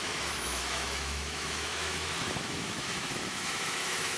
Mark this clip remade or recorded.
remade